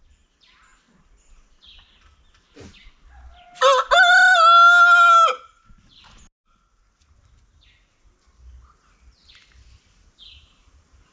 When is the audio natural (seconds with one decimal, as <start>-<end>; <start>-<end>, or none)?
0.0-11.1